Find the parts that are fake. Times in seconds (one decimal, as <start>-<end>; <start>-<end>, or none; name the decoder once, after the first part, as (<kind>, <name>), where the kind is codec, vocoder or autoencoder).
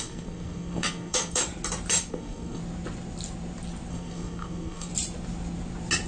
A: 0.0-1.4 (codec, SNAC); 2.1-2.6; 3.9-4.9